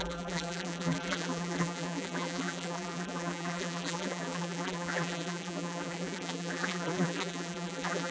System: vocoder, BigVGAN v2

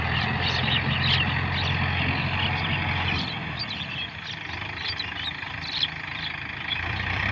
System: none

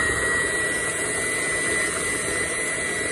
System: none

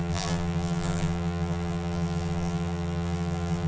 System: vocoder, BigVGAN v2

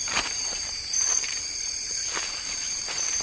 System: vocoder, BigVGAN v2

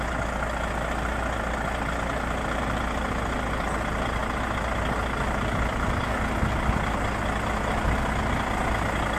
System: none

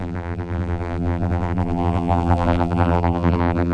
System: vocoder, BigVGAN v2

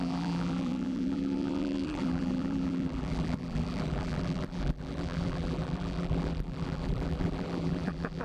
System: vocoder, BigVGAN v2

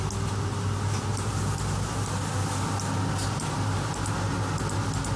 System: none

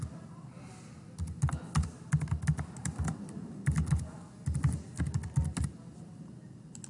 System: none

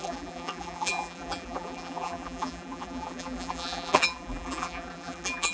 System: vocoder, BigVGAN v2